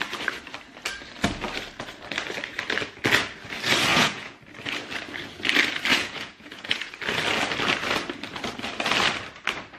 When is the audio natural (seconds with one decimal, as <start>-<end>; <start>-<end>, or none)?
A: 0.0-3.9; 4.4-5.9; 6.9-9.8